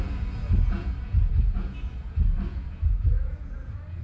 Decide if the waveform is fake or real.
fake